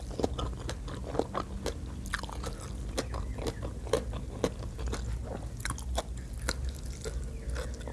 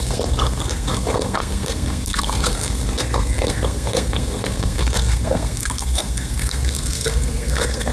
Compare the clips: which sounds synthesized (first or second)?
second